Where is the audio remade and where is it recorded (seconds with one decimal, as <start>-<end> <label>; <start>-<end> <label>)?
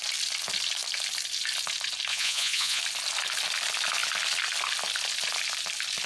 0.0-2.1 recorded; 2.1-2.8 remade; 2.8-6.1 recorded